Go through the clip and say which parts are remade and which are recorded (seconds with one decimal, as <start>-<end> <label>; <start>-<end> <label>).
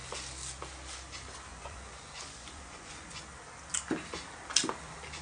0.0-1.5 recorded; 1.5-3.2 remade; 3.2-5.2 recorded